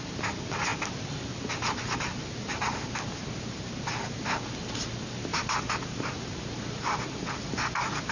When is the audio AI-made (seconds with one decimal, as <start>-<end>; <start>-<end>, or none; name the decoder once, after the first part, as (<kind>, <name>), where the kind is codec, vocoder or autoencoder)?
5.3-8.1 (vocoder, BigVGAN v2)